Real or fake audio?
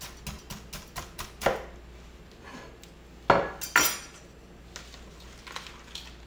real